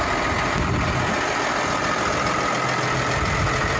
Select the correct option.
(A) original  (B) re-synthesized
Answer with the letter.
A